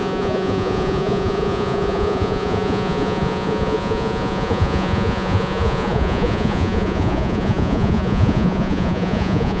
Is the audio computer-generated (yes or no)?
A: yes